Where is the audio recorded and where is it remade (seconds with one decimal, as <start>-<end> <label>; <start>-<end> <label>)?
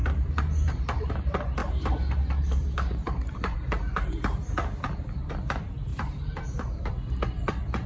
0.0-1.1 remade; 1.1-1.6 recorded; 1.6-4.2 remade; 4.2-5.9 recorded; 5.9-6.9 remade; 6.9-7.9 recorded